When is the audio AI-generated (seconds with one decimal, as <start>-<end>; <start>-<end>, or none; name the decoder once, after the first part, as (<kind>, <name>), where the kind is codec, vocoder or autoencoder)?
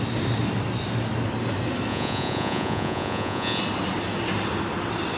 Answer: 1.9-3.6 (vocoder, Vocos)